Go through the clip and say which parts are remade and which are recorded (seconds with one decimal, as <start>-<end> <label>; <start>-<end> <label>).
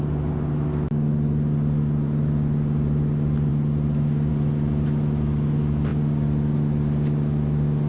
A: 0.0-7.9 recorded